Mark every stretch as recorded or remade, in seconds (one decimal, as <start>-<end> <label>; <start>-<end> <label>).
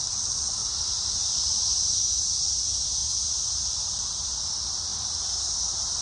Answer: 0.0-0.6 recorded; 0.6-1.9 remade; 1.9-3.0 recorded; 3.0-4.4 remade; 4.4-4.9 recorded; 4.9-6.0 remade